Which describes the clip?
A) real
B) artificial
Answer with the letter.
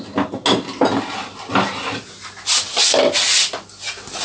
A